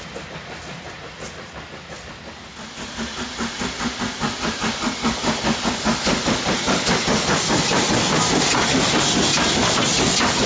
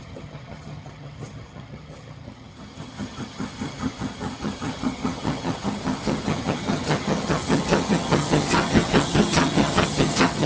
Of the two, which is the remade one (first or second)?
second